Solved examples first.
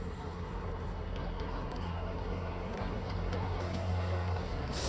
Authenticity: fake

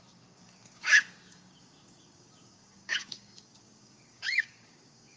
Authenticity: fake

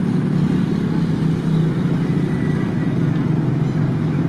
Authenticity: real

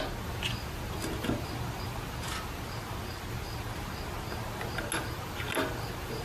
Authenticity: real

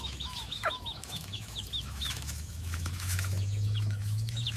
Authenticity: fake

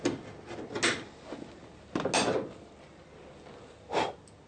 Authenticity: real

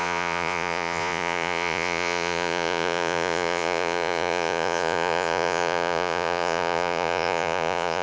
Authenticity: fake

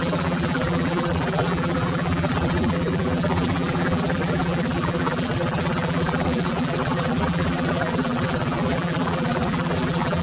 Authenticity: fake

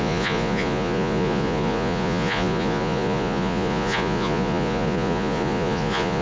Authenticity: fake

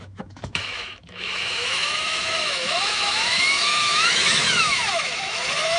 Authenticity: fake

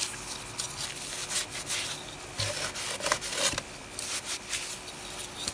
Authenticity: real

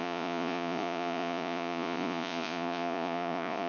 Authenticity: fake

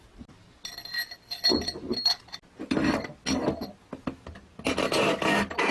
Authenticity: real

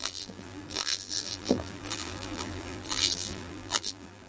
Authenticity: fake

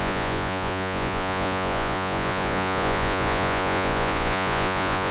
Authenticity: fake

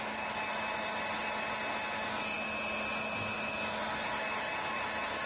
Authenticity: real